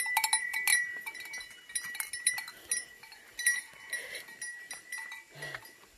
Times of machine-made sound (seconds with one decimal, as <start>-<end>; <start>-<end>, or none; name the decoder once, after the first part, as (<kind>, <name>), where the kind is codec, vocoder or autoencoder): none